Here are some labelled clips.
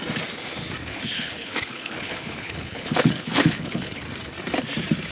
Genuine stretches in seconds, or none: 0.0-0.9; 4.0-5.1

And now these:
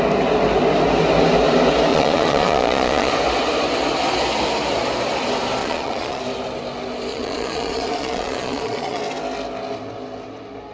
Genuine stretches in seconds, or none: 0.0-1.9; 3.1-5.6; 6.2-7.1; 9.0-10.7

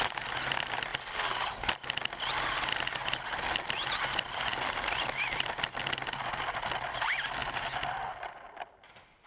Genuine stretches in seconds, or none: 0.0-9.3

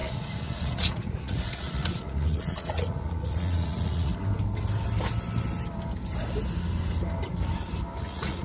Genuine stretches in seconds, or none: 4.1-8.0

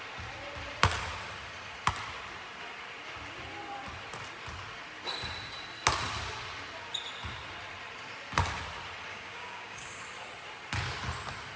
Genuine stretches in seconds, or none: 0.0-9.1; 10.0-11.6

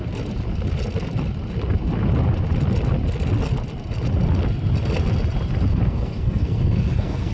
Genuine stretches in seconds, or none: 0.0-5.7